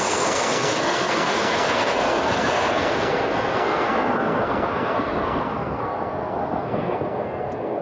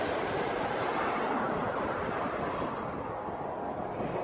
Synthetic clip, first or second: first